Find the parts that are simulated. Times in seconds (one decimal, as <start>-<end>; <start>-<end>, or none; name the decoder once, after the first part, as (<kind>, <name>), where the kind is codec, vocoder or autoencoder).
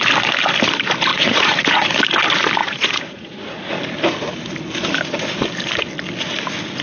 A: 1.1-2.0 (vocoder, Vocos); 2.6-3.7